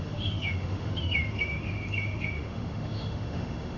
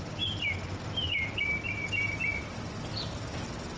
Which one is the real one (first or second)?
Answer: second